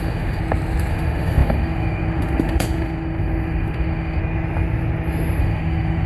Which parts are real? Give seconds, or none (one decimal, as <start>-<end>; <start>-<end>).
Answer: 0.4-0.9; 4.2-5.4